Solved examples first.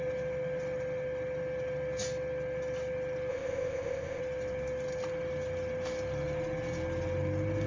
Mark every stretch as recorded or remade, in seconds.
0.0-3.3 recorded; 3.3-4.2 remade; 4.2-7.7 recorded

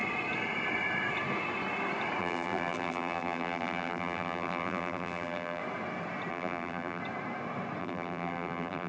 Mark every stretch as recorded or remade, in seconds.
0.0-2.2 recorded; 2.2-5.6 remade; 5.6-6.3 recorded; 6.3-7.0 remade; 7.0-7.8 recorded; 7.8-8.9 remade

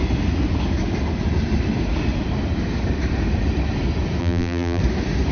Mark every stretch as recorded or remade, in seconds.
0.0-4.2 recorded; 4.2-4.8 remade; 4.8-5.3 recorded

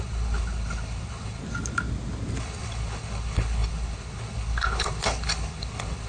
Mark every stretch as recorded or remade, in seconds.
0.0-1.4 remade; 1.4-2.4 recorded; 2.4-6.1 remade

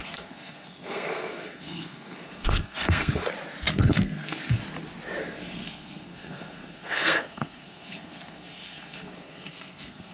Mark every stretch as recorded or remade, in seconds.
0.0-3.2 remade; 3.2-3.7 recorded; 3.7-4.6 remade; 4.6-5.2 recorded; 5.2-10.1 remade

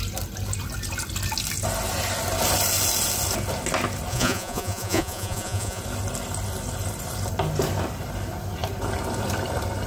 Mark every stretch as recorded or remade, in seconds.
0.0-4.1 recorded; 4.1-5.8 remade; 5.8-9.9 recorded